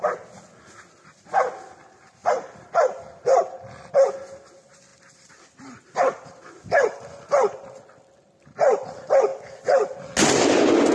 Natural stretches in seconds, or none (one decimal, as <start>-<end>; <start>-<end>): 0.0-2.2; 2.7-10.9